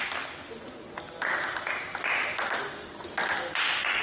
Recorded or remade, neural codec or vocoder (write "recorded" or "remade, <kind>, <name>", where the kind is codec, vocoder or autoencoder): recorded